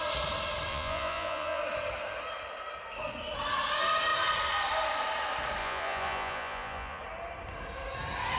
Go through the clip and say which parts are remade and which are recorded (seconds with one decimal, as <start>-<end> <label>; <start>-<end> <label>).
0.0-0.7 recorded; 0.7-1.6 remade; 1.6-5.6 recorded; 5.6-7.0 remade; 7.0-8.4 recorded